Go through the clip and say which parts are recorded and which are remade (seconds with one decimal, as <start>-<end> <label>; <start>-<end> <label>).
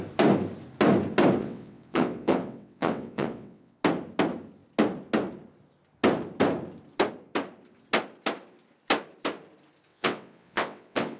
0.0-1.4 recorded; 1.4-3.8 remade; 3.8-9.9 recorded; 9.9-11.2 remade